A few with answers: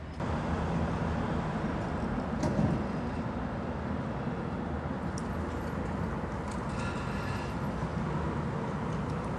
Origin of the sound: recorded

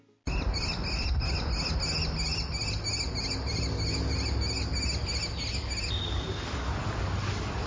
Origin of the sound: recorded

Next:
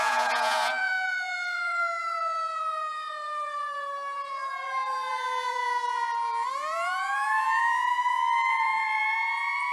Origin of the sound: remade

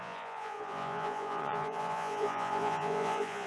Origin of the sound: remade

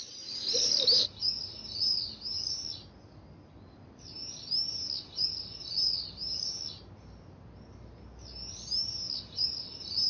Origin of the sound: recorded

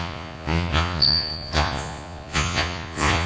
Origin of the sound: remade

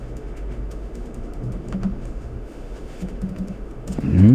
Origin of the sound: remade